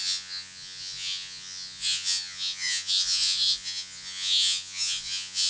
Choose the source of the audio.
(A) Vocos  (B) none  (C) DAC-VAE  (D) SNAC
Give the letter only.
A